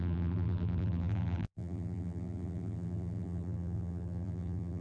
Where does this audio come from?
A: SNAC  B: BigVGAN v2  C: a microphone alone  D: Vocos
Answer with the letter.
B